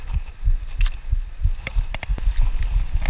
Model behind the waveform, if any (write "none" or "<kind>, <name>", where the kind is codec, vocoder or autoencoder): none